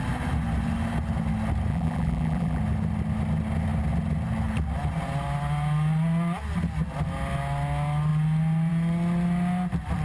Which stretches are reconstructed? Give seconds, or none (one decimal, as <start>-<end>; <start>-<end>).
1.7-2.6